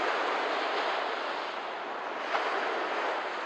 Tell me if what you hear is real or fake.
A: real